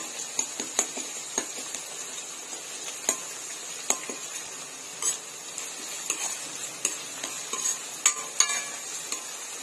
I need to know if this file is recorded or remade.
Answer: recorded